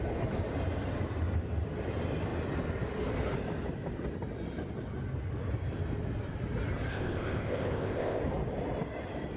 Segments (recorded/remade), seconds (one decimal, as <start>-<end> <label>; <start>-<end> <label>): 0.0-6.9 recorded; 6.9-8.2 remade; 8.2-9.4 recorded